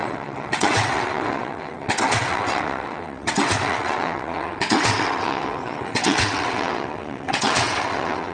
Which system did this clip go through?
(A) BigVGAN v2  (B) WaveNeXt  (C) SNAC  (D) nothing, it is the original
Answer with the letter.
B